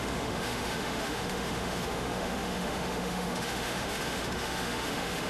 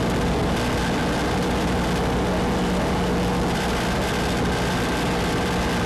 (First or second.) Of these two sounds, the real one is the second